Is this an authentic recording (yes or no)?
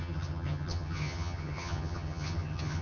no